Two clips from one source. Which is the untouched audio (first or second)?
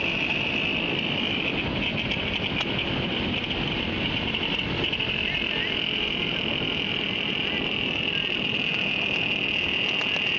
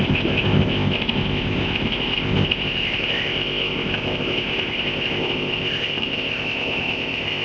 first